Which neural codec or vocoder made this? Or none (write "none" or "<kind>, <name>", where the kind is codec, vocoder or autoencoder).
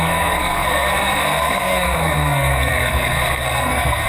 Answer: codec, SNAC